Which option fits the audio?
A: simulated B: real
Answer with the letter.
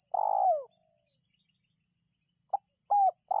B